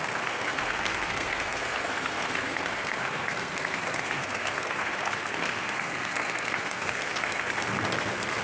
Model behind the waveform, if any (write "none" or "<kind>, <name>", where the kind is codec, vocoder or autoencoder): codec, SNAC